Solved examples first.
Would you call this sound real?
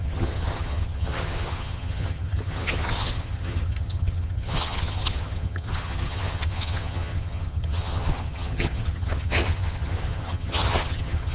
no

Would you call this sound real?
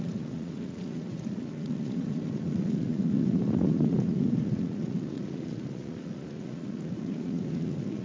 no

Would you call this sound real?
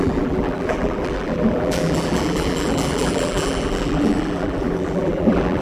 no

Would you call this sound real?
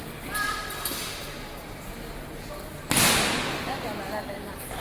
yes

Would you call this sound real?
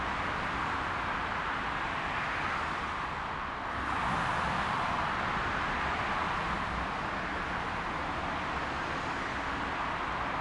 yes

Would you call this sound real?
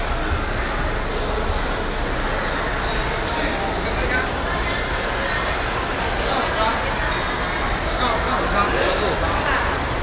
yes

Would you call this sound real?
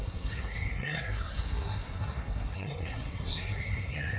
no